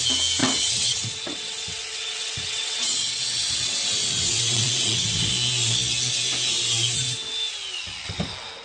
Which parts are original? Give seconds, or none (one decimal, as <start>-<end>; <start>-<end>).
0.0-0.4; 5.3-8.6